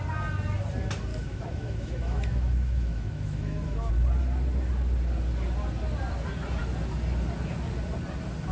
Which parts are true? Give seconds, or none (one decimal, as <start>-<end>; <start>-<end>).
0.0-1.1; 3.9-8.5